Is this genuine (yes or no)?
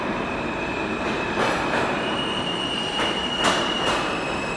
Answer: no